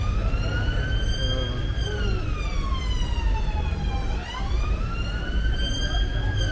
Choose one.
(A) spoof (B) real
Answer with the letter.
B